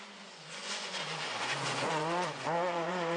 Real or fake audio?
fake